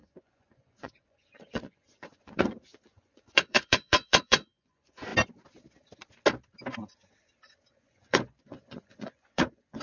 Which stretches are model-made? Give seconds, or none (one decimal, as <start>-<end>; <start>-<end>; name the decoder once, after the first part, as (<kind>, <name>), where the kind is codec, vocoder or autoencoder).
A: 0.0-5.1 (vocoder, Vocos); 7.7-9.8